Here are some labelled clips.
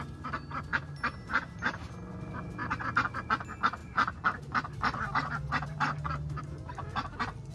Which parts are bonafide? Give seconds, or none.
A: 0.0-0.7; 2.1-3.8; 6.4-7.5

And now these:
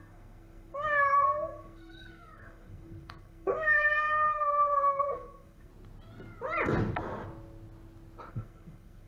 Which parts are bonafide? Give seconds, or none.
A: 5.7-8.3

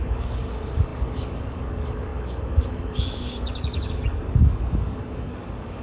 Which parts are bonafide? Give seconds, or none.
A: none

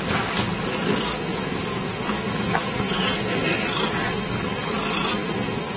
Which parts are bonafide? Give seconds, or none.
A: 0.0-1.3; 3.4-5.8

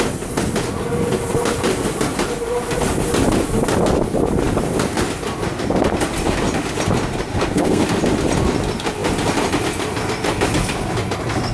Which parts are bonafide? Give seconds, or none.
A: 0.0-7.3; 7.8-11.5

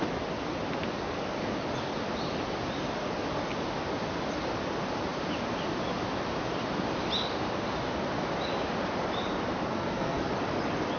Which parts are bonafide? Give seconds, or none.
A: 0.0-9.7; 10.3-11.0

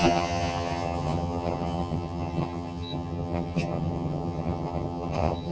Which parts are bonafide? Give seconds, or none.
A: none

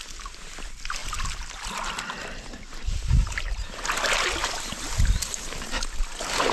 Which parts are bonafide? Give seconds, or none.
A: 0.0-6.5